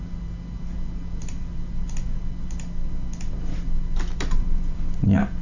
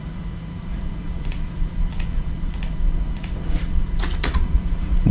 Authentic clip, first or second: first